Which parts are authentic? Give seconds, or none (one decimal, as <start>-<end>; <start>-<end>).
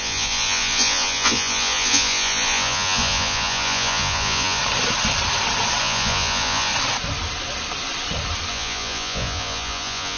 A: 4.6-5.8; 6.7-8.5